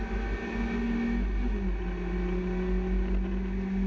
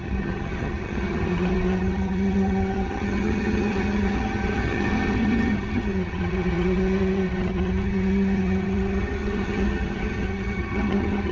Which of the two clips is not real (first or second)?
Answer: second